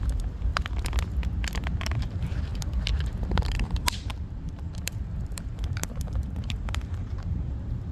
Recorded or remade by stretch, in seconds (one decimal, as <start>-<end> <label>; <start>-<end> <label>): 0.0-0.5 remade; 0.5-1.8 recorded; 1.8-2.5 remade; 2.5-3.2 recorded; 3.2-7.9 remade